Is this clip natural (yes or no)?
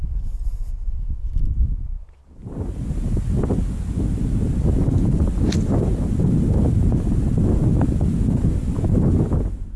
yes